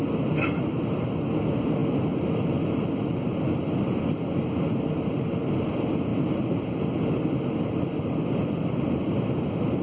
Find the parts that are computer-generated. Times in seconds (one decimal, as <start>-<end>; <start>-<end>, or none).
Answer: 6.1-6.8